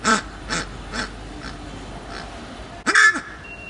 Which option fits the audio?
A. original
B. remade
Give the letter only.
A